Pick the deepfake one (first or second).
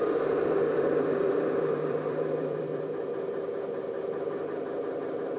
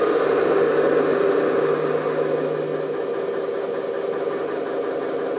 first